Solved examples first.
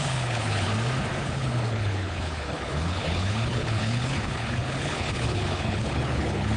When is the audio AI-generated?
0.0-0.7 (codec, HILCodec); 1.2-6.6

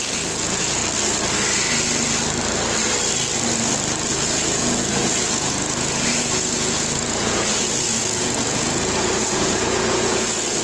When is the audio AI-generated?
0.0-0.8 (vocoder, Vocos); 4.1-10.6

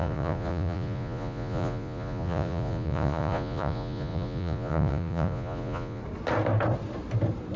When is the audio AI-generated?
0.0-6.0 (vocoder, Vocos)

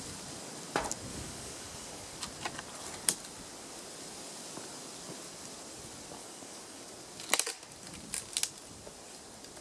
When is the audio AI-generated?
1.1-2.2 (codec, DAC); 6.2-6.8

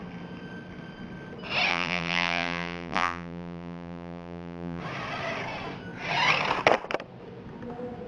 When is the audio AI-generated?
1.7-4.8 (vocoder, BigVGAN v2)